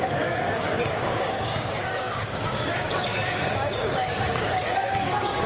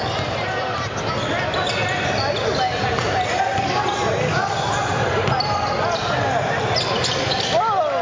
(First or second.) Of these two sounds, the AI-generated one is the first